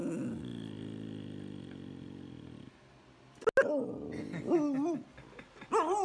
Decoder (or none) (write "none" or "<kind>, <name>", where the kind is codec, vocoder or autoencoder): none